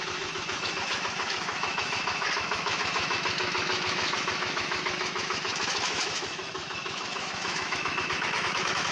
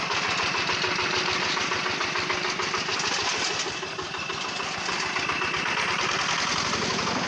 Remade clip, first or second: first